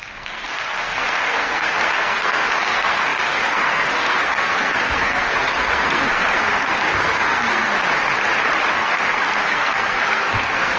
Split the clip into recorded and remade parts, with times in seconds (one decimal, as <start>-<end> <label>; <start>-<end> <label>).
0.0-7.7 remade; 7.7-8.7 recorded; 8.7-10.8 remade